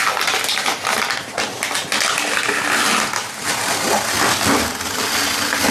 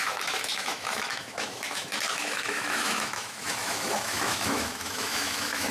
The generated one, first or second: second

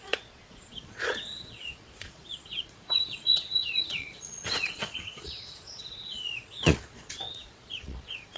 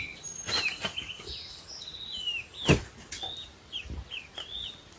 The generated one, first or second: first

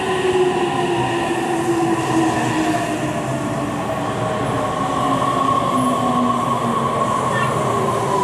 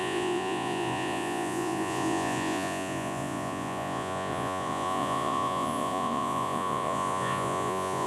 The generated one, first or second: second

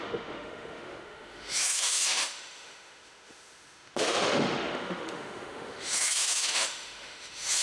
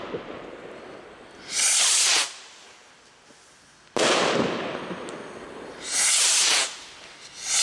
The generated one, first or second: first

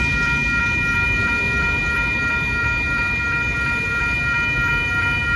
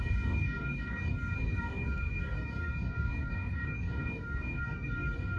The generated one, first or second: second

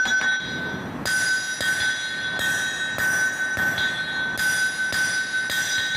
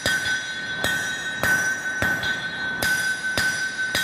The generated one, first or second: second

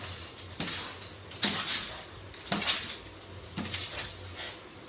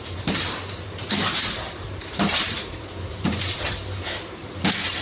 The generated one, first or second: second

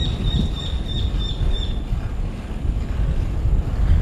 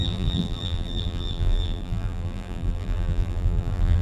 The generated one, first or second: second